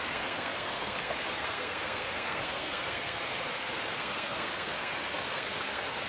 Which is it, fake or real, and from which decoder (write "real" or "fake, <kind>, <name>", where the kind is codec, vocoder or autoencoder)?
fake, codec, SNAC